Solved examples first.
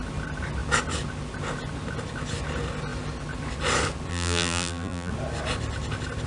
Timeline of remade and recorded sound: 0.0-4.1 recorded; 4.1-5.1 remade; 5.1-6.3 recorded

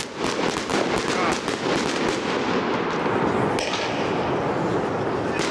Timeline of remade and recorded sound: 0.0-5.5 recorded

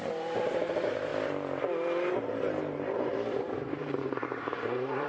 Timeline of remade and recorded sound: 0.0-1.1 remade; 1.1-2.1 recorded; 2.1-5.1 remade

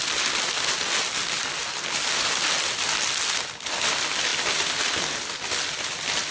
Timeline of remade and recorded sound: 0.0-6.3 recorded